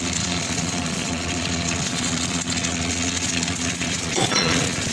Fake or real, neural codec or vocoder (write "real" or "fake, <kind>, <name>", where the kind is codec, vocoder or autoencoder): fake, vocoder, Vocos